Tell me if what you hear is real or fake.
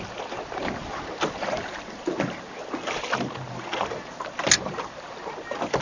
real